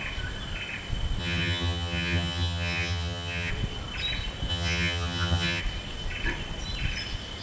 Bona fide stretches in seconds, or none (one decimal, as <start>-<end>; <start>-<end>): 0.0-1.2; 3.5-4.5; 5.6-7.4

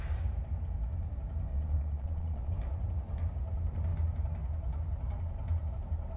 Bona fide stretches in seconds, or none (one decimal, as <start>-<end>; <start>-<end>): 0.0-1.5; 2.5-6.2

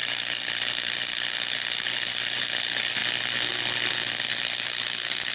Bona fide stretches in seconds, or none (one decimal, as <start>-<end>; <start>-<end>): 0.0-5.3